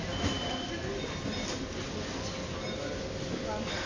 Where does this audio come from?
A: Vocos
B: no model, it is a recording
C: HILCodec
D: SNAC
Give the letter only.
B